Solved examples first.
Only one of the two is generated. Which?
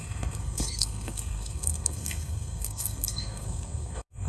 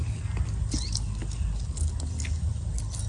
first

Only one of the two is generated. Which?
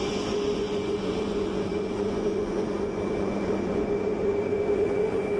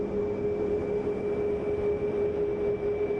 first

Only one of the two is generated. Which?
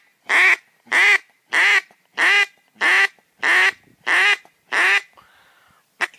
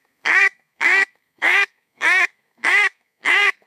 second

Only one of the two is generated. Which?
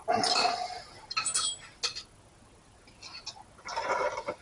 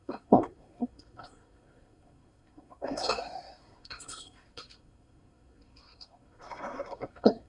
second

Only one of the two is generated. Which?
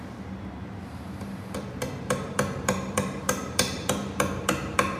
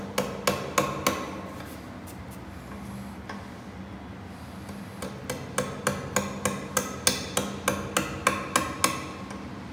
first